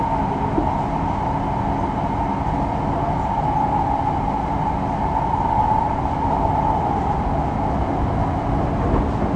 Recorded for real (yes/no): yes